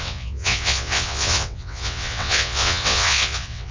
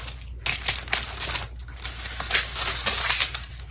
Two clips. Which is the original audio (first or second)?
second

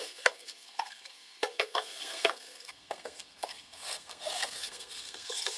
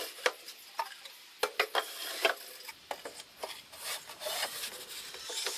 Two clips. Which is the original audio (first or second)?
second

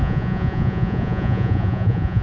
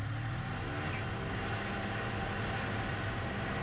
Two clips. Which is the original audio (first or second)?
second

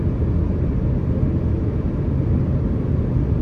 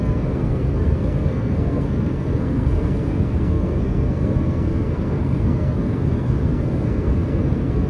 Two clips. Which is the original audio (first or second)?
first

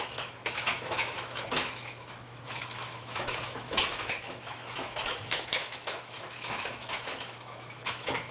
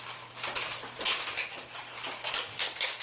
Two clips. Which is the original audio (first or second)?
second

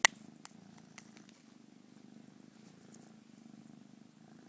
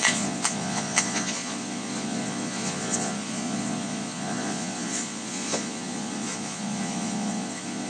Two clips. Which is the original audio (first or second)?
first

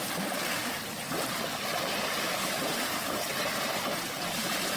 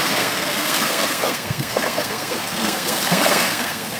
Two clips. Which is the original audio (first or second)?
first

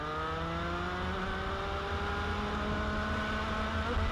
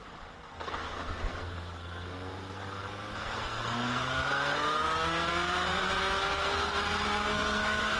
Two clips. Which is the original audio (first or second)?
first